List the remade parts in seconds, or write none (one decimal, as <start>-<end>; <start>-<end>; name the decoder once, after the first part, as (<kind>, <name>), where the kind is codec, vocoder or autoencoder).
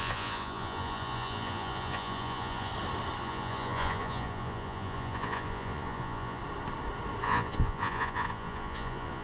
0.0-2.7 (vocoder, Vocos); 3.2-6.4; 7.2-9.2